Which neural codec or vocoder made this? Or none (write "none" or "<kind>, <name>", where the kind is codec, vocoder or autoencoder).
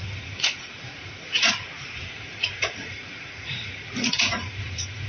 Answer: vocoder, Vocos